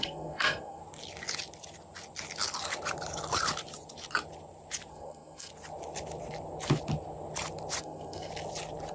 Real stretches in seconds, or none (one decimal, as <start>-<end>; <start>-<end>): 0.8-4.9; 5.5-7.8; 8.3-8.9

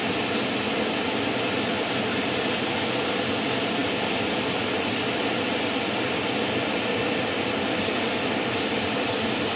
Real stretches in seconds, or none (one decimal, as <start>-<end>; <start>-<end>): 0.0-9.6

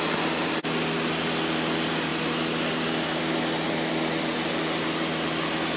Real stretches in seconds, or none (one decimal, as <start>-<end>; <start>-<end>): 0.0-5.8

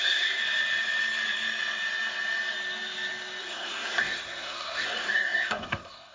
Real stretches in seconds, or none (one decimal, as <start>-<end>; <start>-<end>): 0.4-3.4

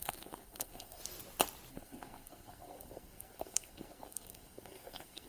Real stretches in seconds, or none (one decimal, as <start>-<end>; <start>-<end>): 1.0-1.7

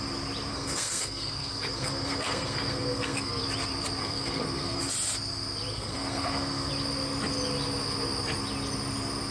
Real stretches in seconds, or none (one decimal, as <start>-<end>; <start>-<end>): 0.0-0.5; 3.4-4.0; 4.8-5.7; 6.7-9.3

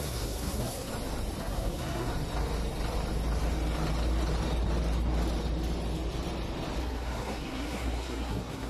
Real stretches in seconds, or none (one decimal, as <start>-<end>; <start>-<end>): 0.9-1.4; 2.1-6.8

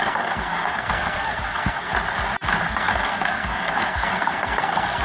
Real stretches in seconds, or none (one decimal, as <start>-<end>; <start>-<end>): 1.9-2.7